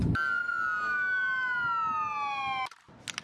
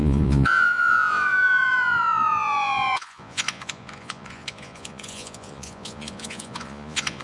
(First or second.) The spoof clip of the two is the second